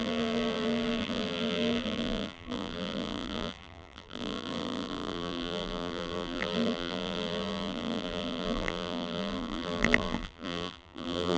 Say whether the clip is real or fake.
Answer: fake